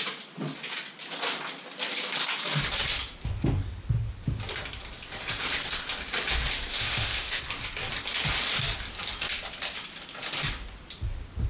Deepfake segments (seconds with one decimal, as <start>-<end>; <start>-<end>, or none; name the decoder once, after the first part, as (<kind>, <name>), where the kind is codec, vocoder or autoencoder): 6.7-7.4 (autoencoder, DAC-VAE)